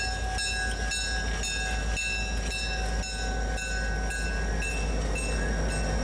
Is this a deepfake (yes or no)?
no